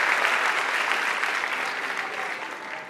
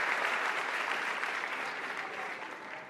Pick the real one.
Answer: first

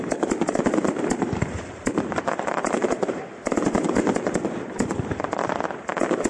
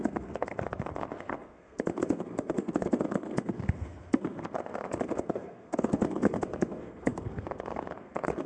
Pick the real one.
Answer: first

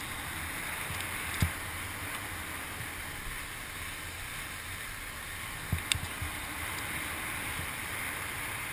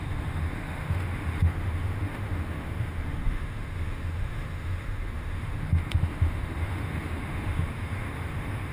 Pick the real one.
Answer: first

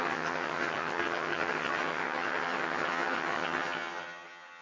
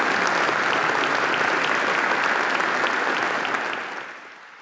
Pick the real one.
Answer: second